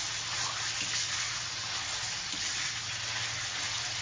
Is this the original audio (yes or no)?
yes